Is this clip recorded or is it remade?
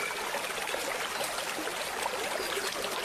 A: recorded